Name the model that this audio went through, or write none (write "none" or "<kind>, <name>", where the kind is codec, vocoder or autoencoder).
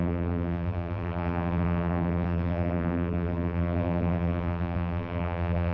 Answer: vocoder, BigVGAN v2